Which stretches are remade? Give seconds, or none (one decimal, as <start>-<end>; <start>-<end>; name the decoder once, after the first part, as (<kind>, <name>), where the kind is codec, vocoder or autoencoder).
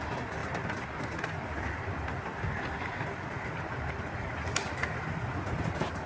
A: none